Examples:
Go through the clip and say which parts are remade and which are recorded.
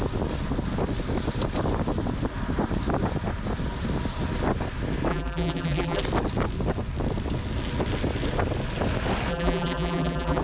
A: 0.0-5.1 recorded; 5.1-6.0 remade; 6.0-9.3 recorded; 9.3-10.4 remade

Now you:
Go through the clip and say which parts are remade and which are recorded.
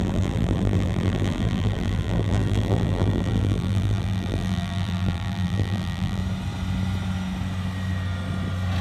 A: 0.0-6.2 remade; 6.2-8.8 recorded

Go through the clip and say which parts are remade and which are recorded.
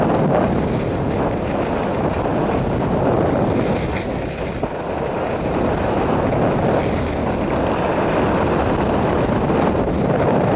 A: 0.0-10.6 recorded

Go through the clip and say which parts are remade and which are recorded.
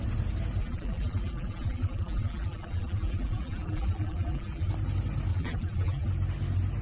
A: 0.0-0.6 recorded; 0.6-4.7 remade; 4.7-5.3 recorded; 5.3-6.1 remade; 6.1-6.8 recorded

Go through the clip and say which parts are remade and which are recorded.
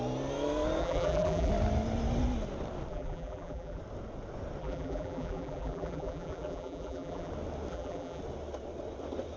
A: 0.0-0.8 recorded; 0.8-1.5 remade; 1.5-2.9 recorded; 2.9-3.8 remade; 3.8-4.6 recorded; 4.6-7.3 remade; 7.3-7.7 recorded; 7.7-8.2 remade; 8.2-9.4 recorded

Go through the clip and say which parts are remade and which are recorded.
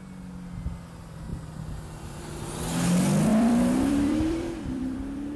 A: 0.0-1.3 recorded; 1.3-2.2 remade; 2.2-3.3 recorded; 3.3-5.4 remade